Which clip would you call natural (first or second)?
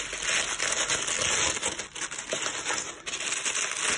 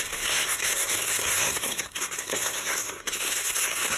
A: first